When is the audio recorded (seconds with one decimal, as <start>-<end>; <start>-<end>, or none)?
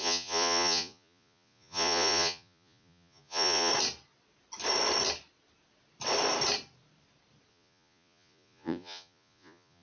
3.7-7.5